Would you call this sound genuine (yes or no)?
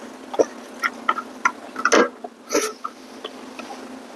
yes